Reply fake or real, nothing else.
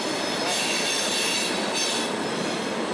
real